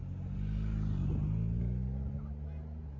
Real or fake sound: real